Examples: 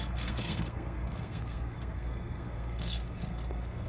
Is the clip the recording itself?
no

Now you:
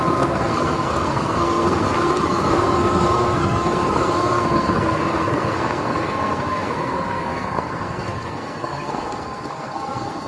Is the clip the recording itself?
no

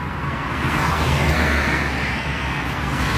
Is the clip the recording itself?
no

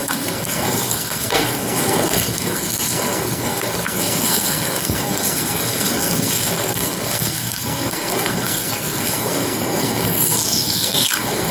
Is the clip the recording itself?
no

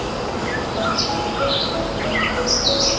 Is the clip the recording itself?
yes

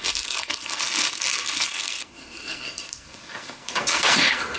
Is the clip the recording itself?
no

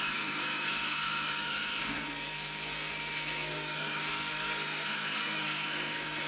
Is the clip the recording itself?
no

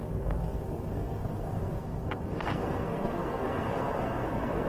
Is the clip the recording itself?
no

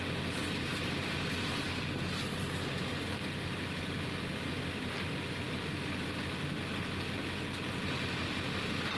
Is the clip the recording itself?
yes